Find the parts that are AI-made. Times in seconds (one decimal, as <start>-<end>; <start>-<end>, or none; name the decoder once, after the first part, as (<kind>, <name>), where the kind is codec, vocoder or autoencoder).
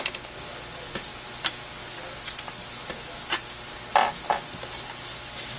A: none